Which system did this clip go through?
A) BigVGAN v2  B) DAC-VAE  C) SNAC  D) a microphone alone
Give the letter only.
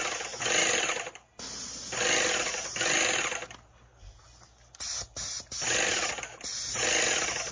D